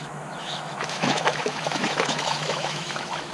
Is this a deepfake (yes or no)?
yes